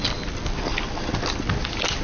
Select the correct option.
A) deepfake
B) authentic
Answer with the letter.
B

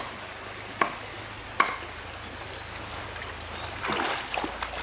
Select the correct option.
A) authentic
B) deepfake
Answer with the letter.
A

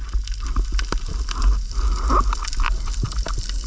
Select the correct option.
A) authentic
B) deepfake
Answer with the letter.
A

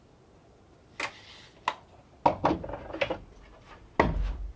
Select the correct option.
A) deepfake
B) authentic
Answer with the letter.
B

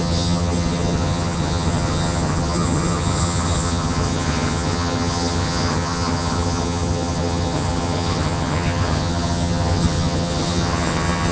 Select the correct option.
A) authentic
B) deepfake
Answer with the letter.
B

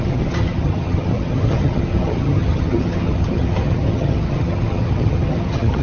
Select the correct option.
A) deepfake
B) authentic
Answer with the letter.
A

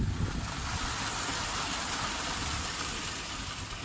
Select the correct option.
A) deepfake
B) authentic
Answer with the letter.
B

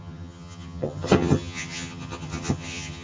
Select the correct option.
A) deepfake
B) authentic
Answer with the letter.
A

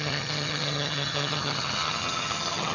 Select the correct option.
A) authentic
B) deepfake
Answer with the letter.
B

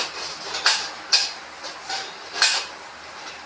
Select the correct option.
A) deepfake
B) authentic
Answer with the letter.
B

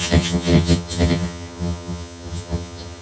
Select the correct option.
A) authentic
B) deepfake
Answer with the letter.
B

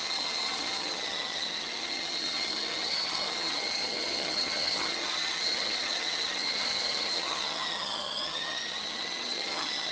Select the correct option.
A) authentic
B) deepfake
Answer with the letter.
B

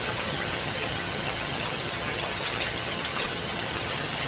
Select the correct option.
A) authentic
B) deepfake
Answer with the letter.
B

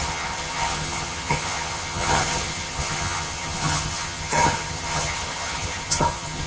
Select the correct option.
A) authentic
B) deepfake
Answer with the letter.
B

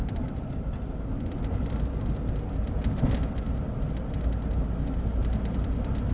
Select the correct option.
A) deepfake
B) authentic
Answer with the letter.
B